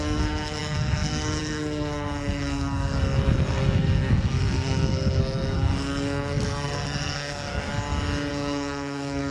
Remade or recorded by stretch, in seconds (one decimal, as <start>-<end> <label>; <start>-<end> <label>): 0.0-7.7 remade; 7.7-8.3 recorded; 8.3-9.3 remade